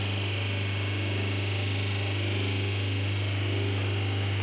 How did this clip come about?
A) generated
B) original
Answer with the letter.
B